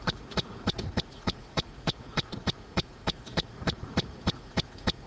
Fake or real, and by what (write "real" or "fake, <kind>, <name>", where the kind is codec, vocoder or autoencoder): fake, vocoder, Vocos